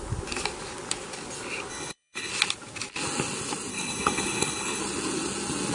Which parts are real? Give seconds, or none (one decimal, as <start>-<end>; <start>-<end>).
0.0-1.7; 2.3-3.7; 4.8-5.7